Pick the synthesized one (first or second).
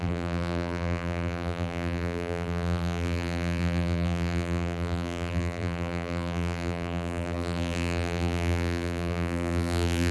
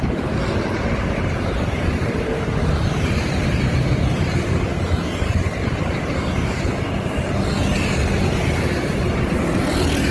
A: first